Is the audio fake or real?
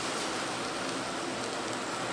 real